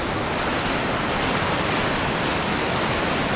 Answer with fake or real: real